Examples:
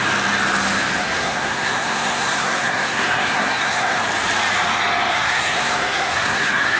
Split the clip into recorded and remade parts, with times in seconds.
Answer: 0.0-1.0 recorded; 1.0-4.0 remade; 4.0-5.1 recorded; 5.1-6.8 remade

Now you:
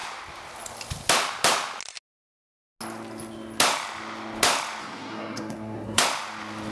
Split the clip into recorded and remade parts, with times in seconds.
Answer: 0.0-4.8 recorded; 4.8-6.0 remade; 6.0-6.7 recorded

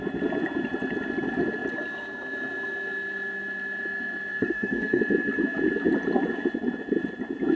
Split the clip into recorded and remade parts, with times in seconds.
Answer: 0.0-4.3 recorded; 4.3-5.0 remade; 5.0-7.6 recorded